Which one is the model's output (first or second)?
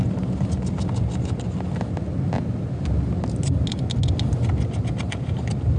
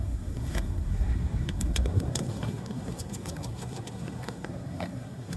second